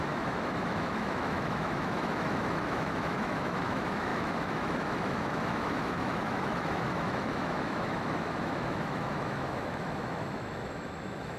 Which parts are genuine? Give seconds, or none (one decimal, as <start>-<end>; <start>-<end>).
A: none